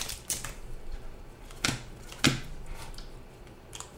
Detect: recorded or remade remade